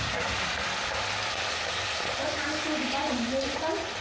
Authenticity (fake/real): real